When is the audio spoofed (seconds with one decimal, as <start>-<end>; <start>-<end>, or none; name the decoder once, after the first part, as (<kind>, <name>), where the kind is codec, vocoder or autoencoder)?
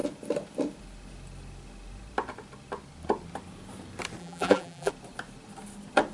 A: 4.2-4.9 (vocoder, BigVGAN v2)